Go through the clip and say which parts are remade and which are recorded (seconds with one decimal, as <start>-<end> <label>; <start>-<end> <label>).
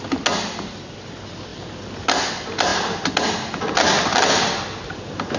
0.0-5.4 recorded